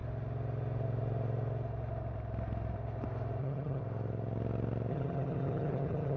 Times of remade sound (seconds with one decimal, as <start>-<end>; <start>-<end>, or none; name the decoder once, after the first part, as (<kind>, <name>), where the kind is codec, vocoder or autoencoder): 3.4-3.8 (vocoder, HiFi-GAN); 4.9-6.2